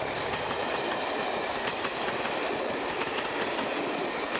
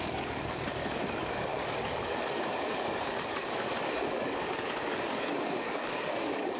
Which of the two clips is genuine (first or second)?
first